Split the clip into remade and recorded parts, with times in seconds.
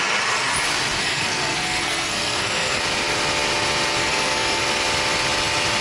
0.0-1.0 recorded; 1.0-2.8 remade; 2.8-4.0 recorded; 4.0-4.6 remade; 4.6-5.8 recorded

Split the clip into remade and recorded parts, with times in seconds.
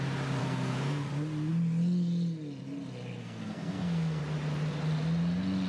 0.0-0.4 recorded; 0.4-1.1 remade; 1.1-3.2 recorded; 3.2-4.2 remade; 4.2-5.7 recorded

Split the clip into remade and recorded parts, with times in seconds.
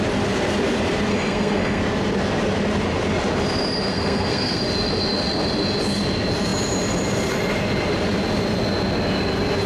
0.0-1.1 recorded; 1.1-1.8 remade; 1.8-3.9 recorded; 3.9-4.6 remade; 4.6-9.7 recorded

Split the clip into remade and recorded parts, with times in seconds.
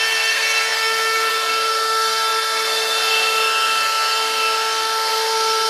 0.0-5.7 remade